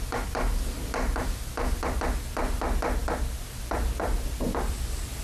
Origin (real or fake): real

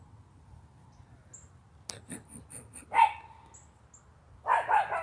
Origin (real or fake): real